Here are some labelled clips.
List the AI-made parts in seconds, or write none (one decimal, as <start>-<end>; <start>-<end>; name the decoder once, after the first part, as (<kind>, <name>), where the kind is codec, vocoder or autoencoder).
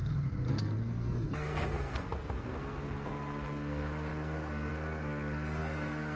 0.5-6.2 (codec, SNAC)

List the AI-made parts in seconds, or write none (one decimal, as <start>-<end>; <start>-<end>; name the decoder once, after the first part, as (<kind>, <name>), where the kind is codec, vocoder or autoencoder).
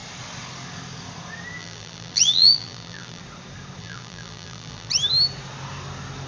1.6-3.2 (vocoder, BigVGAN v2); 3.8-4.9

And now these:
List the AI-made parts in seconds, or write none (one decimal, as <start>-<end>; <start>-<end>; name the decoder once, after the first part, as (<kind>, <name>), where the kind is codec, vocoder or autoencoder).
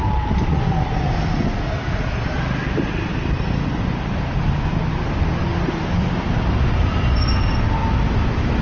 5.5-6.4 (vocoder, BigVGAN v2)